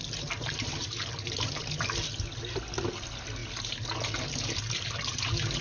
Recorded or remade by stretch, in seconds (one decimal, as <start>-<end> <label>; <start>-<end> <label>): 0.0-0.8 recorded; 0.8-1.6 remade; 1.6-5.6 recorded